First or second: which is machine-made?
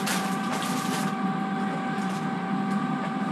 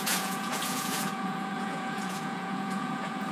second